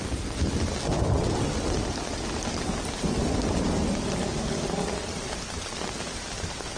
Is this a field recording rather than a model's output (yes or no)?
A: yes